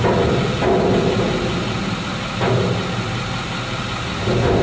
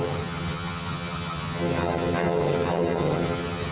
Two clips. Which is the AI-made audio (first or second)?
second